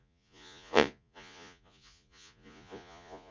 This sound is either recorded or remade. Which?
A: remade